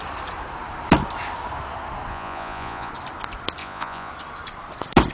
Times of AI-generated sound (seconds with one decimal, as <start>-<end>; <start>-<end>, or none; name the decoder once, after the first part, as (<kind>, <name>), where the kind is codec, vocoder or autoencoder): 2.1-2.9 (vocoder, Vocos); 3.6-4.1